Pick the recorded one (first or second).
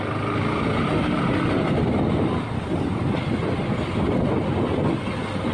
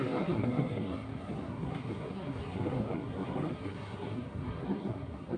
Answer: first